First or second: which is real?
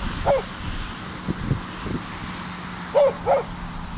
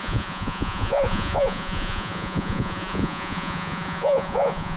first